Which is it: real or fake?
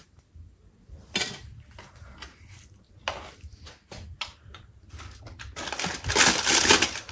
real